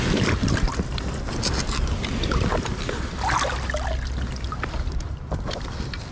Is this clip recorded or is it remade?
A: recorded